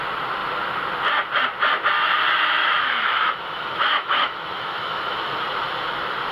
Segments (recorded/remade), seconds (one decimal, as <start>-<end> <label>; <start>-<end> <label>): 0.0-2.6 recorded; 2.6-5.4 remade; 5.4-6.3 recorded